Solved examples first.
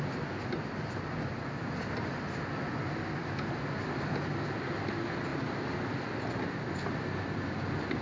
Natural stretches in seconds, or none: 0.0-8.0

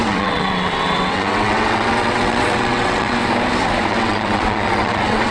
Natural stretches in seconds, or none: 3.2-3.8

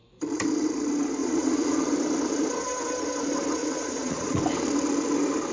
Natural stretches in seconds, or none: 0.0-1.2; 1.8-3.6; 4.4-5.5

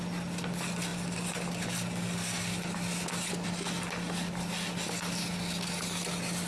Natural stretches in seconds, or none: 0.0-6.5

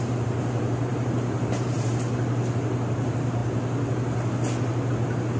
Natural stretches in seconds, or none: 0.0-0.9; 1.9-5.4

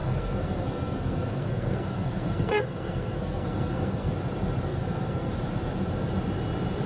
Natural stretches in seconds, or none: 4.1-4.7; 5.3-6.9